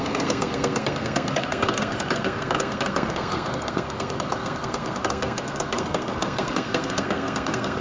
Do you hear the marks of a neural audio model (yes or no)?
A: yes